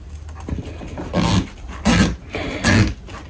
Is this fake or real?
real